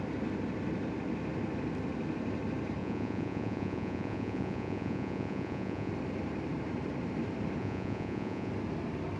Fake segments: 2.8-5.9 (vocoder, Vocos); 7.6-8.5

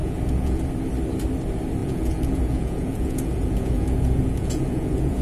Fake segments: 0.0-0.6 (vocoder, Vocos); 1.8-5.2

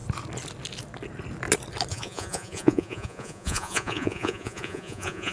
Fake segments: 1.9-5.3 (vocoder, Vocos)

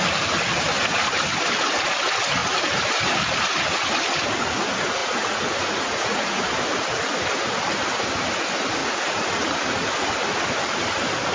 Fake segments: 5.0-6.5 (vocoder, Vocos); 8.8-9.3

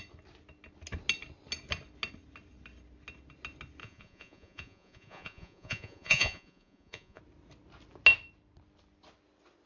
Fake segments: 3.8-7.2 (vocoder, Vocos)

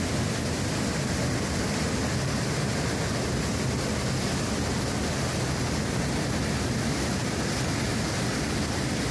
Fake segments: none

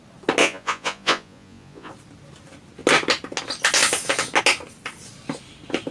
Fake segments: 0.4-1.9 (vocoder, Vocos)